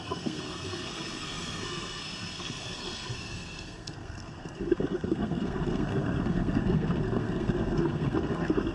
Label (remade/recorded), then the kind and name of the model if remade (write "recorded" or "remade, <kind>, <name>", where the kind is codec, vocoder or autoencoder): remade, codec, SNAC